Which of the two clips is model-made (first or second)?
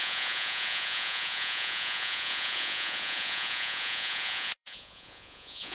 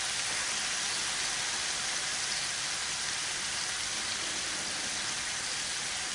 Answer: first